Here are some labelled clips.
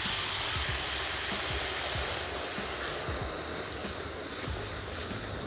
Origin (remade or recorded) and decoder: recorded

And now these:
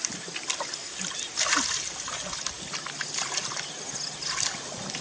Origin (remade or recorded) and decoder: recorded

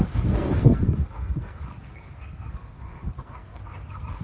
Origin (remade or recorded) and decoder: remade, codec, SNAC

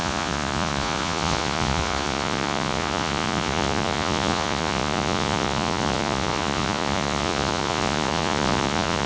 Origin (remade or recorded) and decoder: remade, vocoder, Vocos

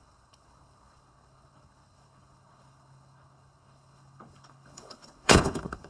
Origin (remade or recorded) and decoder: remade, codec, HILCodec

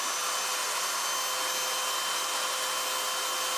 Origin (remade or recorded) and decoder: recorded